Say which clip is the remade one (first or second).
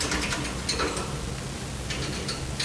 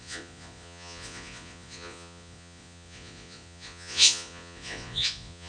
second